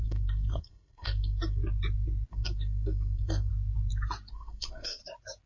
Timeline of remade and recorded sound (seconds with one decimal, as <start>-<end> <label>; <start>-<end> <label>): 0.0-1.6 remade; 1.6-2.3 recorded; 2.3-3.5 remade; 3.5-4.3 recorded; 4.3-5.0 remade; 5.0-5.5 recorded